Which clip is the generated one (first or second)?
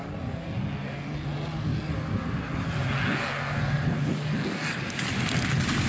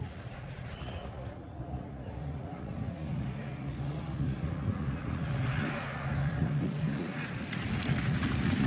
second